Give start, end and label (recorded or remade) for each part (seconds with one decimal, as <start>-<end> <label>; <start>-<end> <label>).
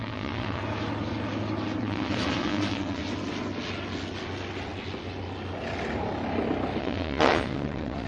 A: 0.0-0.6 remade; 0.6-1.8 recorded; 1.8-3.0 remade; 3.0-6.8 recorded; 6.8-8.1 remade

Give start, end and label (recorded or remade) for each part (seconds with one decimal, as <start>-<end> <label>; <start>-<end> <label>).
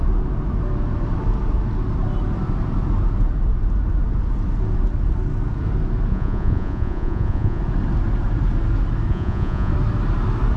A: 0.0-6.1 recorded; 6.1-7.6 remade; 7.6-9.1 recorded; 9.1-9.7 remade; 9.7-10.6 recorded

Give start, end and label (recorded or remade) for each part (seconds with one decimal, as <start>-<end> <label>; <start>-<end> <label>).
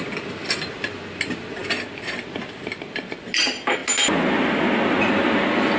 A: 0.0-5.8 recorded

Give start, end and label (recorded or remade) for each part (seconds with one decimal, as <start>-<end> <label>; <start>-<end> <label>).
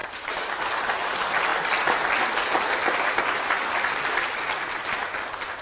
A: 0.0-5.6 recorded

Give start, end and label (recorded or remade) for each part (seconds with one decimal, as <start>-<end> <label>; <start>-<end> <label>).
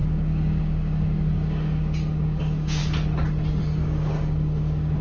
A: 0.0-2.8 remade; 2.8-3.6 recorded; 3.6-5.0 remade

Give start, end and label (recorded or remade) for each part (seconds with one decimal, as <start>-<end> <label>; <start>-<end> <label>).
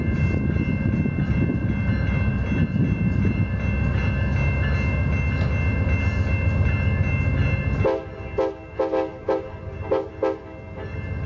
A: 0.0-9.1 recorded; 9.1-10.1 remade; 10.1-11.3 recorded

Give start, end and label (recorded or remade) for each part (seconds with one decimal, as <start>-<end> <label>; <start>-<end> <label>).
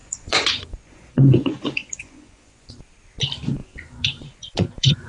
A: 0.0-2.7 remade; 2.7-3.6 recorded; 3.6-5.1 remade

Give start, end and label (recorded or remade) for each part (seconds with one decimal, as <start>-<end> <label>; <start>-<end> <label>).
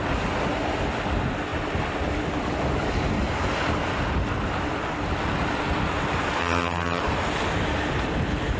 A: 0.0-6.4 recorded; 6.4-7.0 remade; 7.0-8.6 recorded